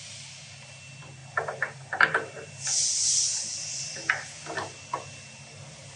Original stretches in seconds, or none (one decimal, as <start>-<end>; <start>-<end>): 0.0-6.0